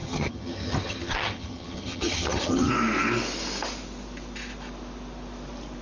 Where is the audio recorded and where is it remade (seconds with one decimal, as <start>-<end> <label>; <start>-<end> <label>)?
0.0-2.7 remade; 2.7-5.8 recorded